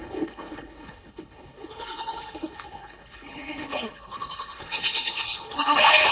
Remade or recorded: remade